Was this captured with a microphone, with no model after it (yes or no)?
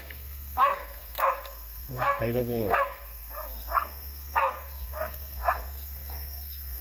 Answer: no